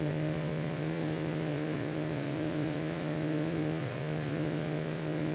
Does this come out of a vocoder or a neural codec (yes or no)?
yes